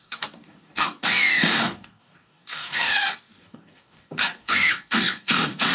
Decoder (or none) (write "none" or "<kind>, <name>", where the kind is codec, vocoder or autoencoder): codec, DAC